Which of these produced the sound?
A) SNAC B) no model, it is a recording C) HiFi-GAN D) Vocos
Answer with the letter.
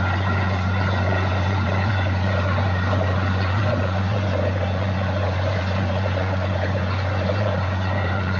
D